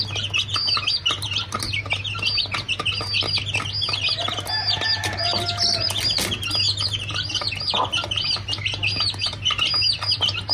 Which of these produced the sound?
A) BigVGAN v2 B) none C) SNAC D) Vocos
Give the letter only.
B